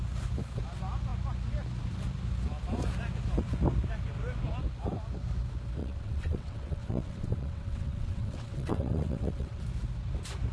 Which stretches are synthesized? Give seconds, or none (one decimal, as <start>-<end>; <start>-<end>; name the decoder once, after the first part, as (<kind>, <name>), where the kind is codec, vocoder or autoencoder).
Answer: 5.8-9.6 (vocoder, WaveNeXt)